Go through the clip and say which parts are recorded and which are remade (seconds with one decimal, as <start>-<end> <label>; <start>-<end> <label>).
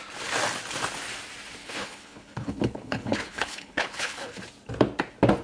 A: 0.0-1.6 recorded; 1.6-4.4 remade; 4.4-5.4 recorded